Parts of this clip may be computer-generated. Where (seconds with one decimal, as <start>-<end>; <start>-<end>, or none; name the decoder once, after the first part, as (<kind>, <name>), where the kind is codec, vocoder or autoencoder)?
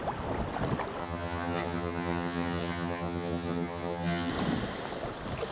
1.0-4.3 (vocoder, HiFi-GAN)